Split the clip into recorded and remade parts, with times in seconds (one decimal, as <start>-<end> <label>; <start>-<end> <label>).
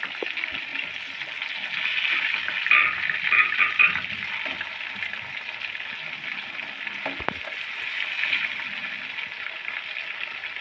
0.0-10.6 recorded